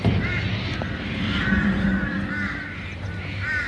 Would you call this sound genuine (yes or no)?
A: yes